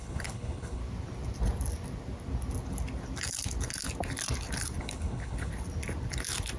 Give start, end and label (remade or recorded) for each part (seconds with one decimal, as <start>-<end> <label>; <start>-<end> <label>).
0.0-0.8 remade; 0.8-4.8 recorded; 4.8-5.5 remade; 5.5-6.6 recorded